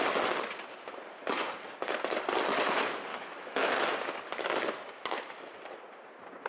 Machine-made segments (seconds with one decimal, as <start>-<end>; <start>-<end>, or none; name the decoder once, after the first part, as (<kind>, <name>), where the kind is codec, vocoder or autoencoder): 3.1-3.7 (autoencoder, DAC-VAE)